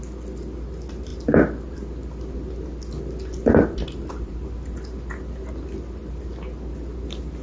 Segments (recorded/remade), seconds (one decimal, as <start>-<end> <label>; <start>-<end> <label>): 0.0-7.4 recorded